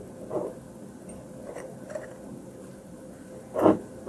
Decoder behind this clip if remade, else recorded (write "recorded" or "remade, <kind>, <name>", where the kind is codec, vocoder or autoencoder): recorded